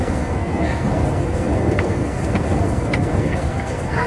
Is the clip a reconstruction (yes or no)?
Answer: yes